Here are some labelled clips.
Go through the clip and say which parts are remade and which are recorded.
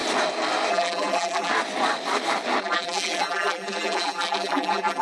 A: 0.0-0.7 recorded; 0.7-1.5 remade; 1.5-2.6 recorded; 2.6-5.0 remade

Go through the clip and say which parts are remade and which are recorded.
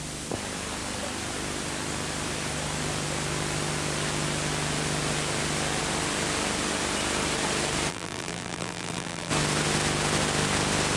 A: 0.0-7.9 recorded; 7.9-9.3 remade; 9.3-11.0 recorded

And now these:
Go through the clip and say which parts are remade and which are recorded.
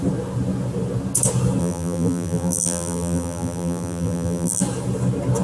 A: 0.0-1.6 recorded; 1.6-4.6 remade; 4.6-5.4 recorded